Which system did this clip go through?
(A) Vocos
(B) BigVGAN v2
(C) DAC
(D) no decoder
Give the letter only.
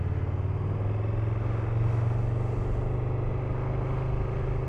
D